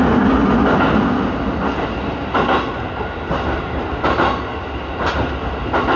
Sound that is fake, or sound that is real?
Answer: real